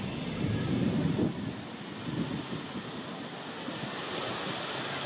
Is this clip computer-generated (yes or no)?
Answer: no